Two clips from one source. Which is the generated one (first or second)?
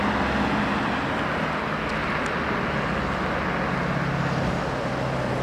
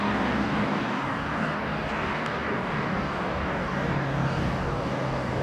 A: second